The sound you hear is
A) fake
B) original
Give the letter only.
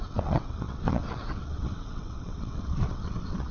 A